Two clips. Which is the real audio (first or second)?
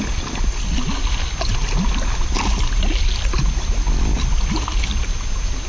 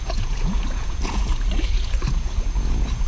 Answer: first